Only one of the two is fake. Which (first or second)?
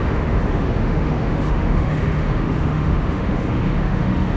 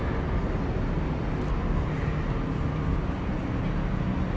first